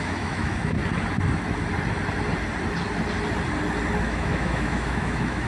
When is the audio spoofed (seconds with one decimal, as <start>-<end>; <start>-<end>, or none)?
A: 0.0-0.8; 4.0-5.5

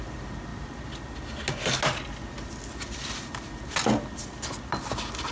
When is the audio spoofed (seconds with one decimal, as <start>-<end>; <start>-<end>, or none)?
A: none

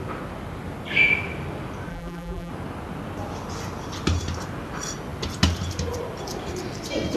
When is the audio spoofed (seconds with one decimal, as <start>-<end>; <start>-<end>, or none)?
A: 1.9-2.5

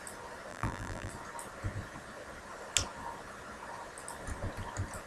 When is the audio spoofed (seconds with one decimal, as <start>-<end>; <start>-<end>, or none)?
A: 0.5-1.1

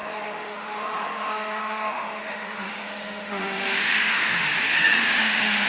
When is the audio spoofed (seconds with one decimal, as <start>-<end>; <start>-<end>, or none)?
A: 0.0-5.7